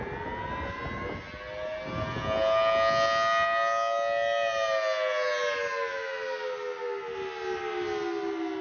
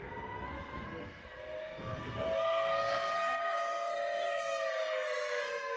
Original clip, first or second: first